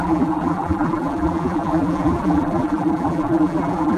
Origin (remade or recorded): remade